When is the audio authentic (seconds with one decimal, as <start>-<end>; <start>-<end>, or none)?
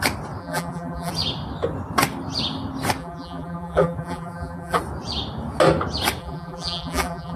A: 0.0-0.4; 1.1-3.0; 4.8-6.2